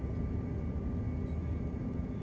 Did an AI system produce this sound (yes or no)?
no